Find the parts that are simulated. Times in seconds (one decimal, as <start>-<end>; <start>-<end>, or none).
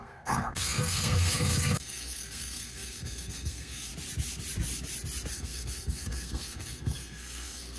0.0-3.9; 5.3-7.8